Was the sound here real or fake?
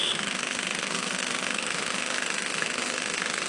fake